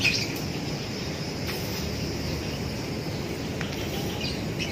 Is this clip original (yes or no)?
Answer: yes